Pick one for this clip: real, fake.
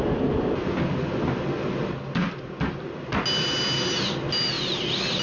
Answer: real